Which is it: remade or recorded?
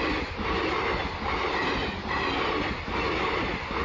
recorded